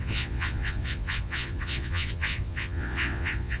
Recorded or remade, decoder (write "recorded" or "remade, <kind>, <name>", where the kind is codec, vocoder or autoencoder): remade, vocoder, Vocos